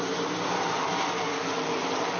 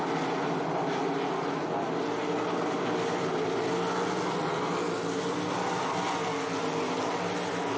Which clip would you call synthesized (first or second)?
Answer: first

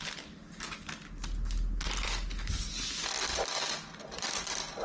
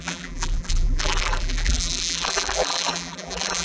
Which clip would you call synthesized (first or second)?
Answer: second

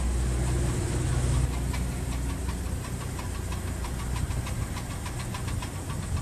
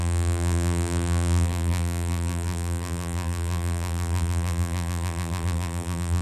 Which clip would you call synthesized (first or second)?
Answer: second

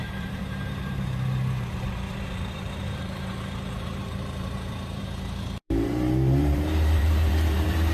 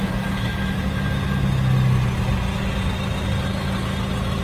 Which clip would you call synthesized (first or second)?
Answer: first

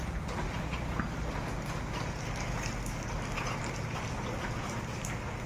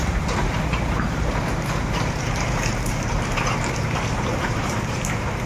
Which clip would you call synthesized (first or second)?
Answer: second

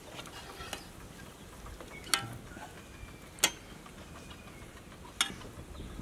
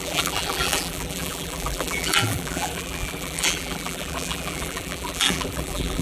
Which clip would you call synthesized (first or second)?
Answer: second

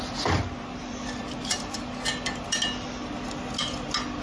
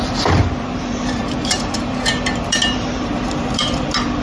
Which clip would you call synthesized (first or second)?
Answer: second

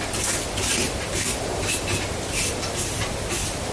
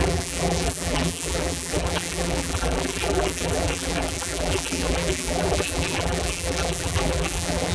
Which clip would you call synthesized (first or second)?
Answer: second